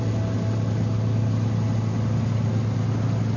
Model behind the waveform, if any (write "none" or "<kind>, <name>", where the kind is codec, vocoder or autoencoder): none